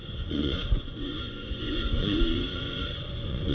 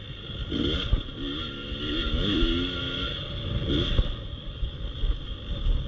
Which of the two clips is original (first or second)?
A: second